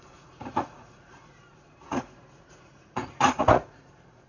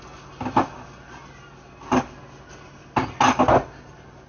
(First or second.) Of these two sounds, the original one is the second